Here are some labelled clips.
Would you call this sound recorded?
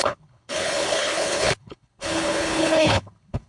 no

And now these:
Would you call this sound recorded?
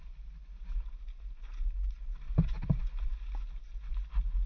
yes